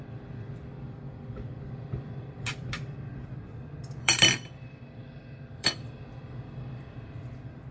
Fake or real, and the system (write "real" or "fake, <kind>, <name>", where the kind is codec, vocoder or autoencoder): fake, vocoder, BigVGAN v2